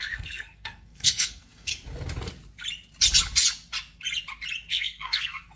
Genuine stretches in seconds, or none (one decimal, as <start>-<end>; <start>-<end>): 1.7-4.7